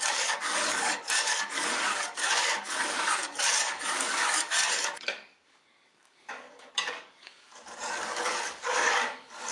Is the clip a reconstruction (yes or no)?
yes